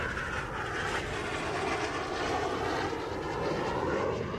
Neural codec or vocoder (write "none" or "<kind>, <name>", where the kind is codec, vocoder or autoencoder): none